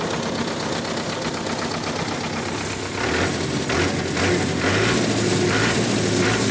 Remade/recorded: recorded